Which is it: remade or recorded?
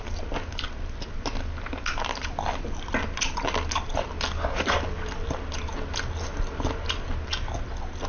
recorded